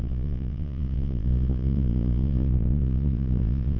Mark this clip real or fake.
fake